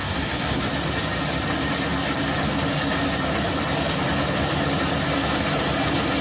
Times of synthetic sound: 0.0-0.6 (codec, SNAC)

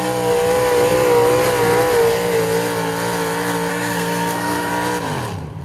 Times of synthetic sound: 3.7-4.7 (codec, SNAC)

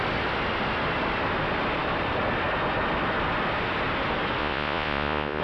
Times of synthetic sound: 4.4-5.4 (vocoder, Vocos)

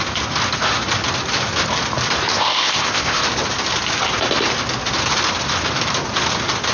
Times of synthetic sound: 2.3-3.2 (codec, ZipCodec)